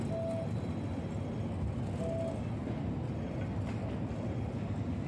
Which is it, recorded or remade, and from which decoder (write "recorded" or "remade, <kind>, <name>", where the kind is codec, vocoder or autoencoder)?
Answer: recorded